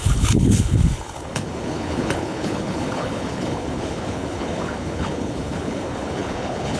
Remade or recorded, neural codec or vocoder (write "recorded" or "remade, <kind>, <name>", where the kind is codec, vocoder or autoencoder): remade, codec, HILCodec